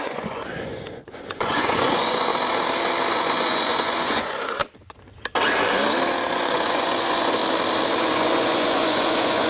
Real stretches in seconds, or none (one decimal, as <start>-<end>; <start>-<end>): 2.3-3.1; 4.6-6.3; 7.4-8.0